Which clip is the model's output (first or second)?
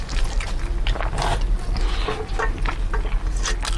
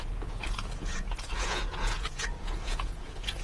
second